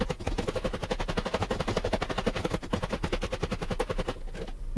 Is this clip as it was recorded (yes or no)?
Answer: yes